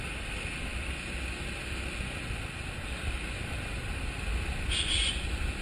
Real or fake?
real